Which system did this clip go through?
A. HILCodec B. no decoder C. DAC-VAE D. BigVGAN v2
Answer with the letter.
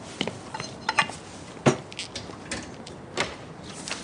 B